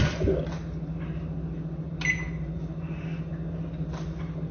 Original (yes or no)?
yes